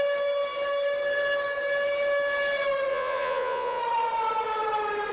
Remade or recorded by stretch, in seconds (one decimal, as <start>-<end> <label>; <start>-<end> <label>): 0.0-2.9 recorded; 2.9-3.8 remade; 3.8-5.1 recorded